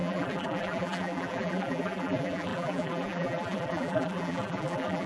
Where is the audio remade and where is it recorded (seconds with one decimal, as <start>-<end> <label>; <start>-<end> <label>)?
0.0-5.1 remade